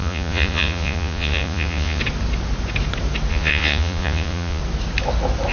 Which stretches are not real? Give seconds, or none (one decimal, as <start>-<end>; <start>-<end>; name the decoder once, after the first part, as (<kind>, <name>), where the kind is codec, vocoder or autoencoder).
0.0-2.0 (vocoder, Vocos); 3.3-4.6